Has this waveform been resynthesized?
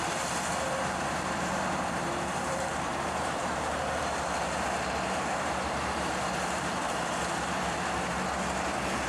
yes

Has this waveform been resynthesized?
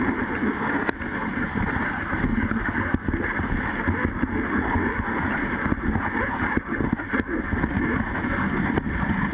no